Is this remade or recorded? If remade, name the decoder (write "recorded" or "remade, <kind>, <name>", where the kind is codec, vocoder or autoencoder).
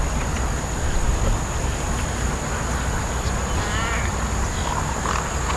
recorded